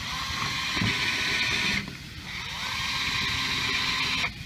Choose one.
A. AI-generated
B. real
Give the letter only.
B